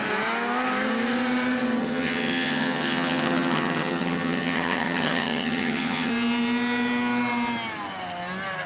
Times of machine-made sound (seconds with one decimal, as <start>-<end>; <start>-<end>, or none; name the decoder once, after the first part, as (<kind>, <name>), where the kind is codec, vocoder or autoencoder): 1.8-6.1 (vocoder, HiFi-GAN)